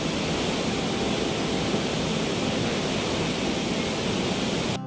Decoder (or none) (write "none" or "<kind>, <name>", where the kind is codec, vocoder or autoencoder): none